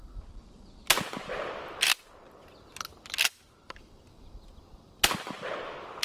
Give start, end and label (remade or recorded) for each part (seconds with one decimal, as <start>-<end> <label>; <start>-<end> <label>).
0.0-6.0 recorded